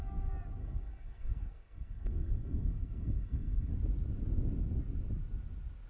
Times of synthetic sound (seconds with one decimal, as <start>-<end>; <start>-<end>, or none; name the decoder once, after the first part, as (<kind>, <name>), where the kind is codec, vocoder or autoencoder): 0.6-3.7 (codec, SNAC)